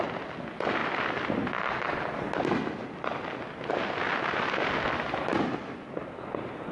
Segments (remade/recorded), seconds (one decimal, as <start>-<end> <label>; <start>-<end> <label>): 0.0-6.7 recorded